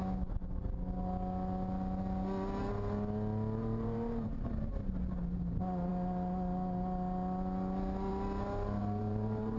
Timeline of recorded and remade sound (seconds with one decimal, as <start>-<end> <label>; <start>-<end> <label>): 0.0-3.6 recorded; 3.6-4.7 remade; 4.7-8.8 recorded; 8.8-9.6 remade